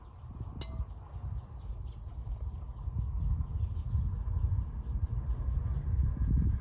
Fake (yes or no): no